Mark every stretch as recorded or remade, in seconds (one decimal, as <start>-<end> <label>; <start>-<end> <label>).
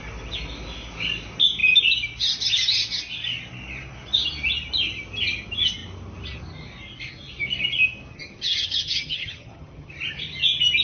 0.0-8.1 recorded; 8.1-9.9 remade; 9.9-10.8 recorded